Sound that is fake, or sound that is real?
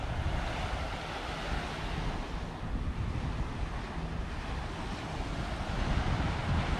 real